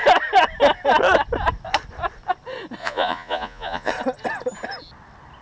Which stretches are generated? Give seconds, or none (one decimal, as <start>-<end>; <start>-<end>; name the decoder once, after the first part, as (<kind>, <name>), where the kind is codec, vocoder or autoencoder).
2.8-3.9 (vocoder, Vocos)